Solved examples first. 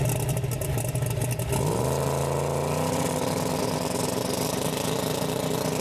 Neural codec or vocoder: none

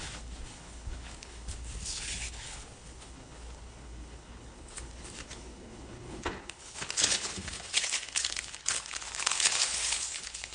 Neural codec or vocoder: codec, HILCodec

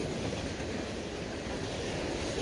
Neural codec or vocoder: none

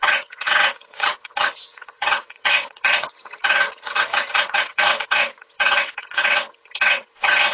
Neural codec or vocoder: vocoder, WaveNeXt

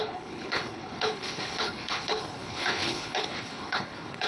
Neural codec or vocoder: codec, HILCodec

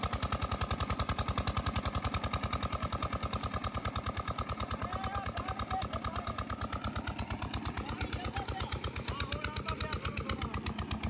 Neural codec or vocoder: none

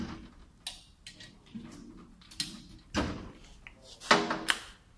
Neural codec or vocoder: none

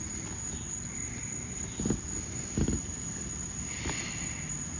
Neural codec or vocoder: none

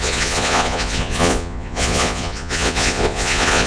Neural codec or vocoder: vocoder, Vocos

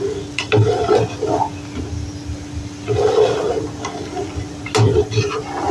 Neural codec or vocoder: none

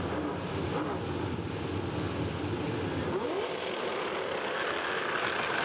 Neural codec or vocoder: none